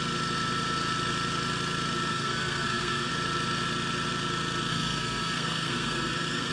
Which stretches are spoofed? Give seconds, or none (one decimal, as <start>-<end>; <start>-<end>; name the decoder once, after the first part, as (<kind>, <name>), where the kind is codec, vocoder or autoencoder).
2.1-3.1 (codec, SNAC); 4.7-6.5